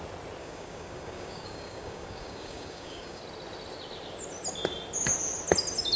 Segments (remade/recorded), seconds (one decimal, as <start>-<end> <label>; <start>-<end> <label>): 0.0-0.4 recorded; 0.4-3.2 remade; 3.2-6.0 recorded

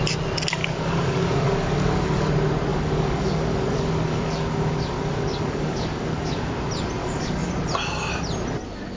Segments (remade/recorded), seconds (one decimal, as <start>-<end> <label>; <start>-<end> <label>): 0.0-0.6 recorded; 0.6-2.3 remade; 2.3-2.7 recorded; 2.7-6.5 remade; 6.5-7.0 recorded; 7.0-7.5 remade; 7.5-9.0 recorded

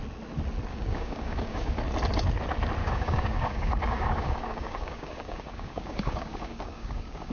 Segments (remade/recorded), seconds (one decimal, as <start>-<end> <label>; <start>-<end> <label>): 0.0-0.7 recorded; 0.7-1.8 remade; 1.8-2.8 recorded; 2.8-7.3 remade